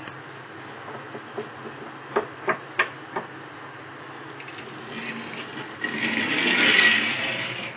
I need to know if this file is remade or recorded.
recorded